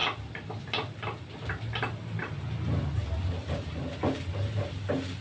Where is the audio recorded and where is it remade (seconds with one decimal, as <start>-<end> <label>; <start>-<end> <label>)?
0.0-5.2 recorded